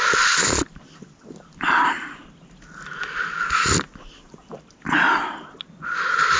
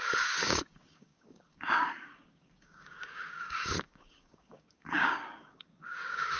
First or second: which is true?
first